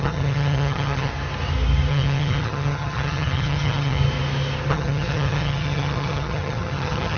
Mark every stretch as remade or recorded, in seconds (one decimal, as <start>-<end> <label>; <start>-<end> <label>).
0.0-1.1 remade; 1.1-1.9 recorded; 1.9-4.0 remade; 4.0-4.7 recorded; 4.7-7.2 remade